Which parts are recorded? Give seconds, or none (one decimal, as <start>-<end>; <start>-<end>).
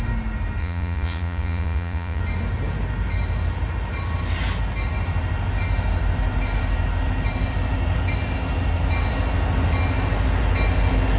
0.0-0.6; 2.2-11.2